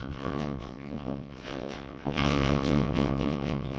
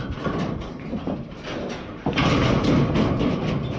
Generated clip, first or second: first